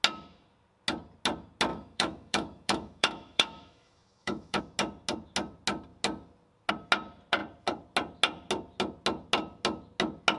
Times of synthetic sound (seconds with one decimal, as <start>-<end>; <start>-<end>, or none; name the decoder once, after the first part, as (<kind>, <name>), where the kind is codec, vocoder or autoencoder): 1.7-4.6 (autoencoder, DAC-VAE)